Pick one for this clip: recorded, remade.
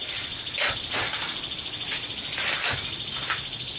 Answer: recorded